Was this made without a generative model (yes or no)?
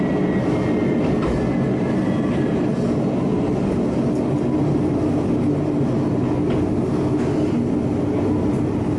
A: yes